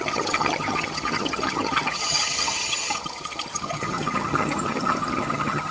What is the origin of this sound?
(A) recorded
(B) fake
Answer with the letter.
B